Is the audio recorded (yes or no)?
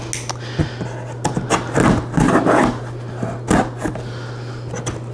yes